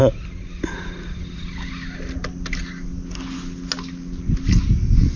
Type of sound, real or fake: real